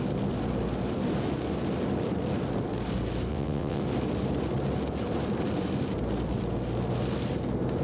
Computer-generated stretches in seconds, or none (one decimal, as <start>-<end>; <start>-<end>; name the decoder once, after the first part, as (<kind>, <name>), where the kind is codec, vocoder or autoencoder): 3.3-3.8 (vocoder, WaveNeXt)